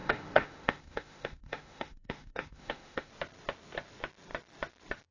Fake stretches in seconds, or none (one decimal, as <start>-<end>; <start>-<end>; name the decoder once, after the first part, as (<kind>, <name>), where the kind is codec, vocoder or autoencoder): 0.0-3.1 (autoencoder, DAC-VAE)